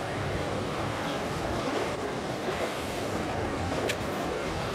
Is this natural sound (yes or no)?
no